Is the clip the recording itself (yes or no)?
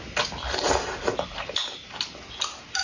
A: yes